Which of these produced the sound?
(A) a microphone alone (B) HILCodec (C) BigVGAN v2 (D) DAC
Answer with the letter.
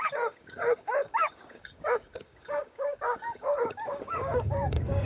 D